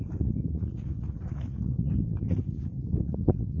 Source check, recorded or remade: remade